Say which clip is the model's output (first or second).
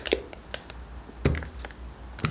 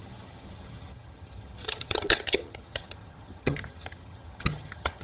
second